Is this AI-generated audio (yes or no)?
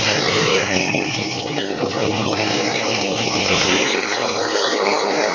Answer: yes